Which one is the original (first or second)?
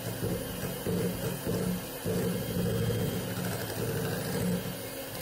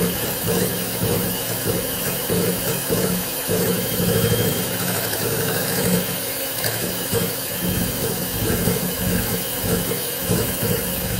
first